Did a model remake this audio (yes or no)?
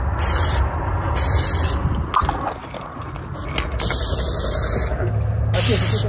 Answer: no